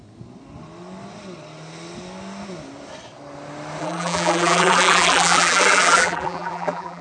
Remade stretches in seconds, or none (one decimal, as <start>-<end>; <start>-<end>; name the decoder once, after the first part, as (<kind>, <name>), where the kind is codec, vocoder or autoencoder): 3.8-7.0 (vocoder, BigVGAN v2)

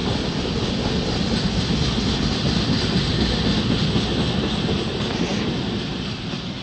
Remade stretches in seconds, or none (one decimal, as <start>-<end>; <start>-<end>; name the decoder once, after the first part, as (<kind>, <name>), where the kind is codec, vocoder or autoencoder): none

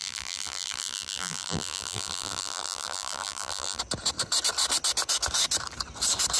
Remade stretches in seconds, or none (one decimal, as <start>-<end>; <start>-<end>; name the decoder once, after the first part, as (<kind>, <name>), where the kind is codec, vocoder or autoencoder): 0.0-3.8 (vocoder, BigVGAN v2)

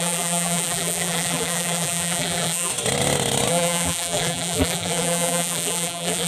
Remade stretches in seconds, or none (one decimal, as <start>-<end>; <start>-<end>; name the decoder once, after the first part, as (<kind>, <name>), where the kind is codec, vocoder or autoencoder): 0.0-2.7 (vocoder, BigVGAN v2); 3.5-6.3

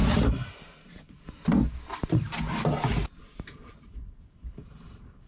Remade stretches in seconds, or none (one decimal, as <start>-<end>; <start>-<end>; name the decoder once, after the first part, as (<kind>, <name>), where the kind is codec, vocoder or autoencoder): 3.2-5.3 (vocoder, BigVGAN v2)